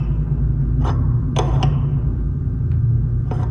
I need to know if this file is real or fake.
real